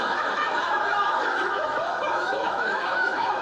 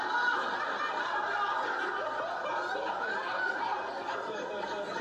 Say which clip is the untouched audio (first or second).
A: second